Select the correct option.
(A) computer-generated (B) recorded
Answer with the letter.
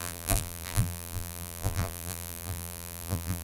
A